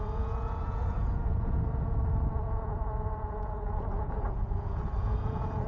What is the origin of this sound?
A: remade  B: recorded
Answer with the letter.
A